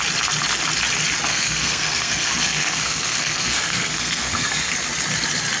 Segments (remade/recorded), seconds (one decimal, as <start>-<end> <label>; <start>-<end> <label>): 0.0-1.3 recorded; 1.3-4.7 remade; 4.7-5.6 recorded